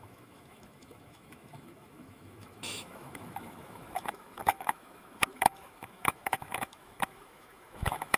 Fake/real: fake